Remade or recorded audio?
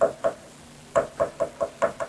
recorded